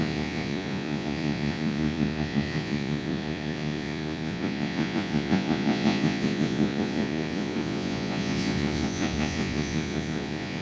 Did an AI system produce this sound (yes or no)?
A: yes